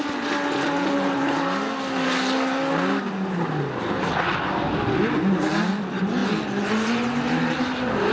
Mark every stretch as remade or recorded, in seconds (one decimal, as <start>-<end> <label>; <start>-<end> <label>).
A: 0.0-8.1 recorded